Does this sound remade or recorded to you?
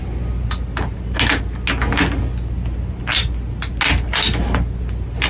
recorded